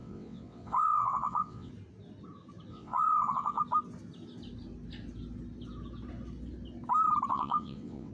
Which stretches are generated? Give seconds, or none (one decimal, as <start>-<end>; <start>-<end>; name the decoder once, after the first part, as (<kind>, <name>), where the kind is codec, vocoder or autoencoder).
0.0-1.7 (vocoder, WaveNeXt); 2.7-3.6; 7.3-8.1